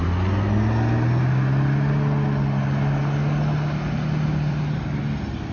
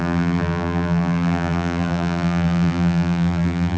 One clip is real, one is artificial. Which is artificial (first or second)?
second